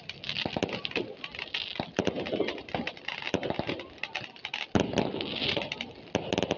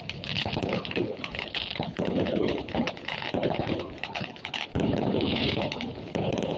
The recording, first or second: first